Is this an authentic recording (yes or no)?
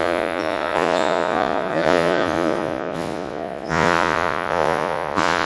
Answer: no